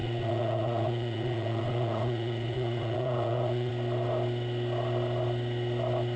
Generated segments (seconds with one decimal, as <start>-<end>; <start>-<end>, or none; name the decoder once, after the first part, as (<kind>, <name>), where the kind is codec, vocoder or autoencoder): 0.0-3.7 (vocoder, Vocos)